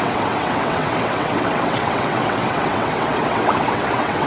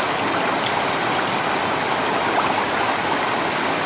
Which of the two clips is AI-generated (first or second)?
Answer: first